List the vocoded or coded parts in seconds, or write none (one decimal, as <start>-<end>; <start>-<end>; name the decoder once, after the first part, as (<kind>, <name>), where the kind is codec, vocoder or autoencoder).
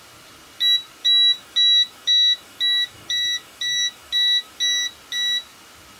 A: 1.0-4.6 (autoencoder, DAC-VAE)